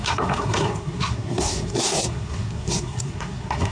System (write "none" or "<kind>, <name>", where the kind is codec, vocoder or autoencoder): codec, SNAC